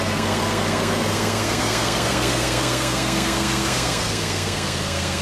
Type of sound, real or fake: fake